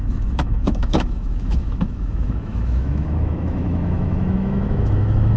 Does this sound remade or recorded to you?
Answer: remade